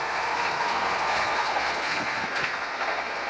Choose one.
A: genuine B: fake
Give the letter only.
B